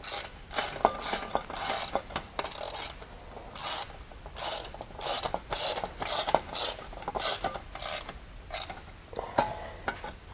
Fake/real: real